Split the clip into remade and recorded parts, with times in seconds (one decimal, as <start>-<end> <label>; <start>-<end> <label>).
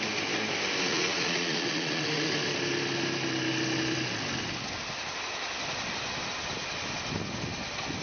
0.0-0.9 recorded; 0.9-2.3 remade; 2.3-8.0 recorded